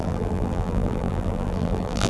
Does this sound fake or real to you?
fake